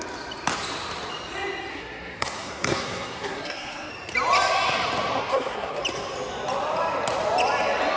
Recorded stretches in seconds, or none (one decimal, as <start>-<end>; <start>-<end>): 0.0-1.7; 3.9-5.2; 5.8-8.0